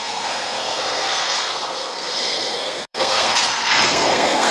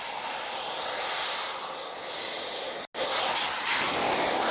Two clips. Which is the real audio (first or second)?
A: second